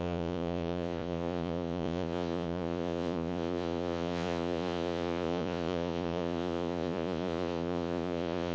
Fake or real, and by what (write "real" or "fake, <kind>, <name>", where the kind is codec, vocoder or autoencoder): fake, vocoder, Vocos